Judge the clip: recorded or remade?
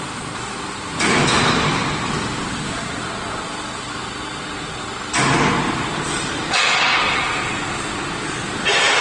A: remade